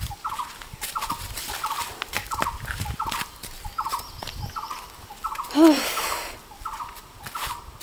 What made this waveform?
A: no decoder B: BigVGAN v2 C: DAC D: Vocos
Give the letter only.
A